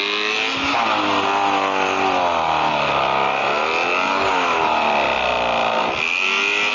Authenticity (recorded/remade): recorded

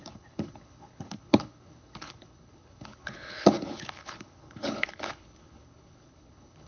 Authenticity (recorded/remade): remade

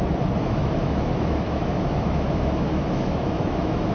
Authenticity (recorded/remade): remade